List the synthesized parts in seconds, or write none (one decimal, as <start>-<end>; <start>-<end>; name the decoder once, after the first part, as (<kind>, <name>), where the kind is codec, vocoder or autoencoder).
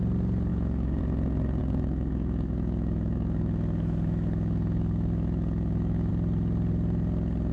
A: 0.5-1.0 (autoencoder, DAC-VAE); 1.6-6.1